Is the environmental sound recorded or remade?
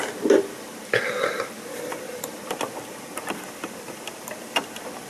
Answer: remade